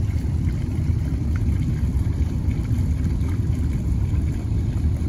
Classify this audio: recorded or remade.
remade